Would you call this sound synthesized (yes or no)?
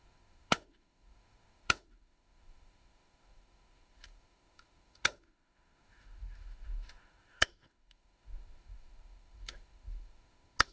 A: yes